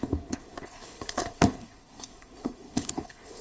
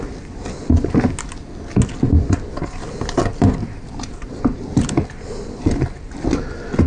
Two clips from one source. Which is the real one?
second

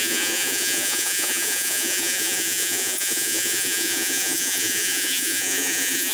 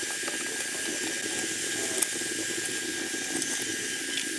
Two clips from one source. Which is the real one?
second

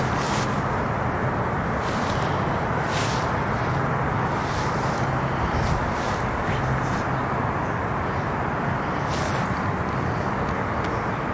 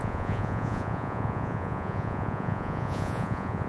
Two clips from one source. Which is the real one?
first